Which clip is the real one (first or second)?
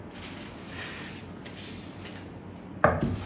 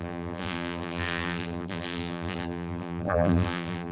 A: first